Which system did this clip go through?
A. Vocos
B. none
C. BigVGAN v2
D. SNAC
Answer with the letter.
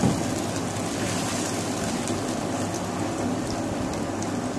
B